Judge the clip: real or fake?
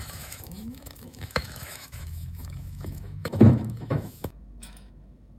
fake